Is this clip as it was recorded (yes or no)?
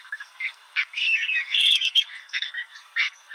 no